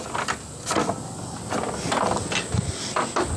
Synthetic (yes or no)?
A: no